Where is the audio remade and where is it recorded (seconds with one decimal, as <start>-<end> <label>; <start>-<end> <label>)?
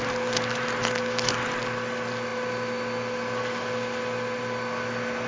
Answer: 0.0-5.3 recorded